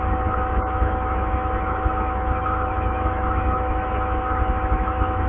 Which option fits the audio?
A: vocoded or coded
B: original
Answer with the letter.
A